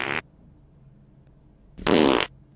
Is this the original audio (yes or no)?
yes